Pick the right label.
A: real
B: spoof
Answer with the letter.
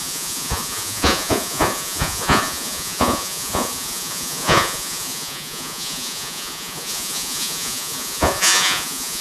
B